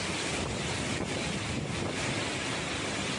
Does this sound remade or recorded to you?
remade